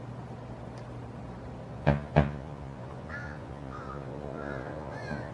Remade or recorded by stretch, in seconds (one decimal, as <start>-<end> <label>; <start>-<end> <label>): 0.0-1.7 recorded; 1.7-5.3 remade